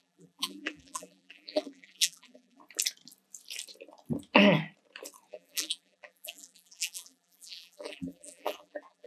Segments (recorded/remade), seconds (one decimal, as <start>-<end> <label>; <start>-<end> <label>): 0.0-2.6 remade; 2.6-5.3 recorded; 5.3-9.1 remade